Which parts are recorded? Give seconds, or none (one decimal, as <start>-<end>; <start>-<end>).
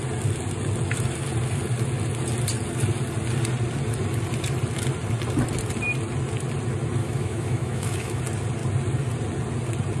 0.0-7.0; 8.2-10.0